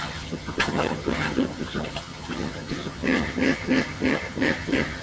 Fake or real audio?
fake